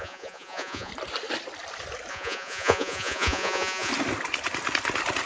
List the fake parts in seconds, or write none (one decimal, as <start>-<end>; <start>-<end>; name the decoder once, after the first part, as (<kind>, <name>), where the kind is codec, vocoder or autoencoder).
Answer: 0.0-0.9 (vocoder, Vocos); 2.1-3.9